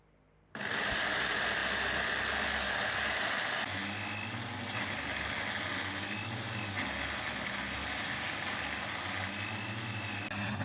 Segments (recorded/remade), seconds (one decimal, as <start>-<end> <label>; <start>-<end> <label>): 0.0-10.6 recorded